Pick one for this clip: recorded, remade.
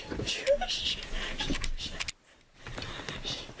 recorded